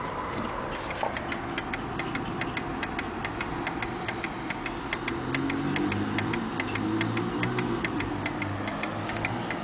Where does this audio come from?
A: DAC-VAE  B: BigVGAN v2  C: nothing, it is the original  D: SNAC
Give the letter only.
C